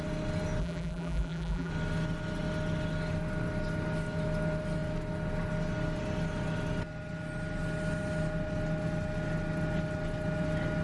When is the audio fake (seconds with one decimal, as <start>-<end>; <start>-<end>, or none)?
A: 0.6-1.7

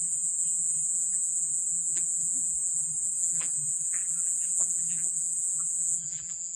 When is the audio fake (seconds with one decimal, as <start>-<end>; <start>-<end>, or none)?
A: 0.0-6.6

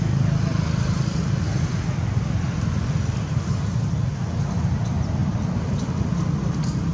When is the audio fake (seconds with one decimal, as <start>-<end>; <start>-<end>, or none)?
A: 0.5-1.4; 5.2-5.9

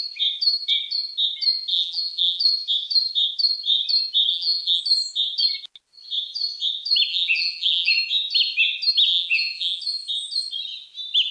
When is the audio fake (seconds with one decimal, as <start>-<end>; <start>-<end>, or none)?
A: 1.7-2.4; 4.3-4.8; 7.1-7.9; 9.1-9.8

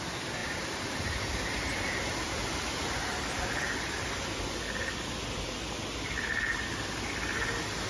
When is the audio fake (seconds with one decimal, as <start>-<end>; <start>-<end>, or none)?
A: 0.4-2.3

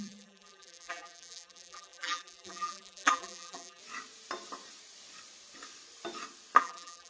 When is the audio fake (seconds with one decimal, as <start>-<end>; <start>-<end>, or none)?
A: 0.0-3.8; 6.6-7.1